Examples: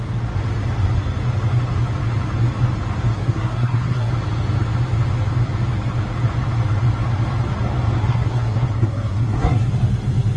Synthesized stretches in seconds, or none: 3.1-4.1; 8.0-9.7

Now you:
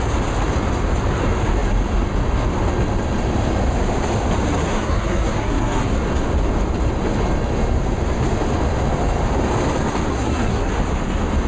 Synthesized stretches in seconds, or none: 4.5-5.9; 10.1-10.7

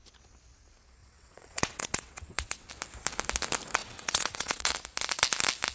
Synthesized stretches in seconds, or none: 1.0-2.7; 3.8-4.7

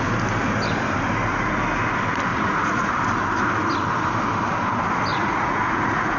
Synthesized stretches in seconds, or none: 2.3-3.0; 5.1-6.2

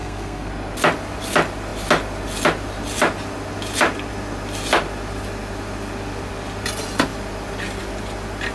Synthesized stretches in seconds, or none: 0.0-0.5

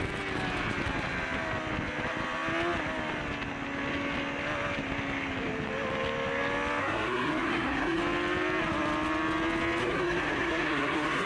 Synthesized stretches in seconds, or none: 6.8-8.0; 9.8-11.3

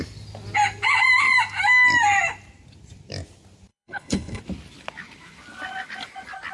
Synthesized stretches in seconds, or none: 3.7-4.4